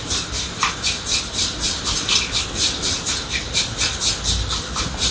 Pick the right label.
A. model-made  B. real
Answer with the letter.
B